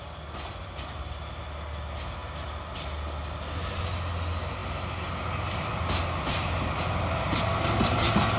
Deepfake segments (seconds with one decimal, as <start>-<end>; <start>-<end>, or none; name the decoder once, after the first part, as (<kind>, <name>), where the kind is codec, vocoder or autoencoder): none